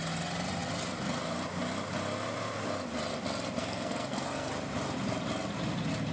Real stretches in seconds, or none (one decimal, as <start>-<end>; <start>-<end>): 0.0-3.6; 4.5-6.1